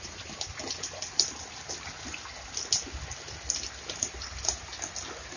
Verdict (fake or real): real